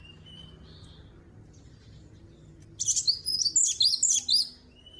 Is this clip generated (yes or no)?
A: no